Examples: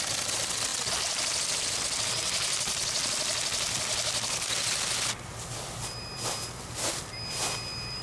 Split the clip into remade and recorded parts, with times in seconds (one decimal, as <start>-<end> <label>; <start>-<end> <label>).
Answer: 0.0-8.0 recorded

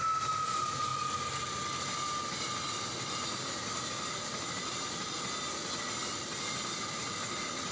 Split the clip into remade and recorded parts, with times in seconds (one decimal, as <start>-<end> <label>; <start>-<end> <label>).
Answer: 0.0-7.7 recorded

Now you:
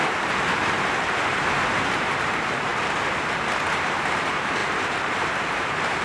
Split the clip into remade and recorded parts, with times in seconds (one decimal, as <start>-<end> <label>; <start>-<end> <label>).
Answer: 0.0-2.7 remade; 2.7-3.8 recorded; 3.8-6.0 remade